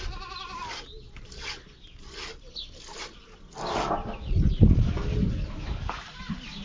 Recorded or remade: recorded